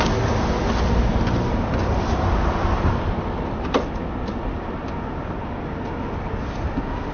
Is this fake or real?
real